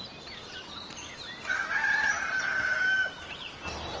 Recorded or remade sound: recorded